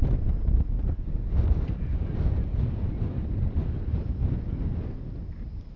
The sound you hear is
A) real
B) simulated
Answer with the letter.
A